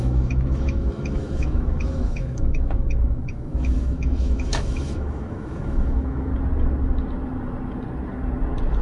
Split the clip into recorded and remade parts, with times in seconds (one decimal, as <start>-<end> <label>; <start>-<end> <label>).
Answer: 0.0-6.3 remade; 6.3-8.8 recorded

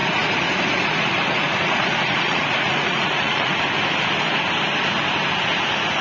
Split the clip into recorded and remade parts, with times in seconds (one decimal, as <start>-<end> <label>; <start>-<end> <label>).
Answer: 0.0-3.6 remade; 3.6-6.0 recorded

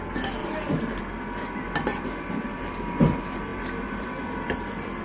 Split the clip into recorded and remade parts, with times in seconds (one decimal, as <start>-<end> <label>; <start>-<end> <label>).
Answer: 0.0-0.4 recorded; 0.4-1.0 remade; 1.0-3.5 recorded; 3.5-5.0 remade

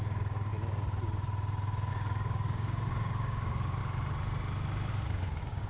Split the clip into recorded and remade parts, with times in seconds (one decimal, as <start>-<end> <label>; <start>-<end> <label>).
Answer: 0.0-0.5 remade; 0.5-1.9 recorded; 1.9-3.8 remade; 3.8-4.9 recorded; 4.9-5.7 remade

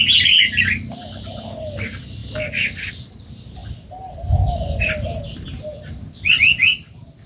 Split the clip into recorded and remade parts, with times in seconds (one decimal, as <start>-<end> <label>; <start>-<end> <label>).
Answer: 0.0-6.7 recorded; 6.7-7.3 remade

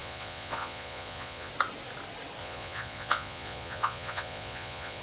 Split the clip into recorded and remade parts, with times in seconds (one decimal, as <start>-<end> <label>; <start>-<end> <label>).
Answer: 0.0-1.5 remade; 1.5-2.4 recorded; 2.4-5.0 remade

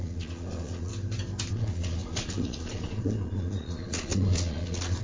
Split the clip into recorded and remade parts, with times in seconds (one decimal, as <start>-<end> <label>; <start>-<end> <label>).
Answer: 0.0-0.9 remade; 0.9-1.5 recorded; 1.5-5.0 remade

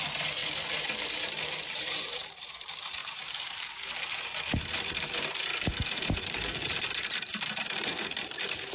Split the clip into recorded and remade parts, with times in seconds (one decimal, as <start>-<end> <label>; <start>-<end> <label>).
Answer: 0.0-0.4 remade; 0.4-1.4 recorded; 1.4-8.7 remade